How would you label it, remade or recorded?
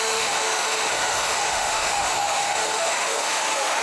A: remade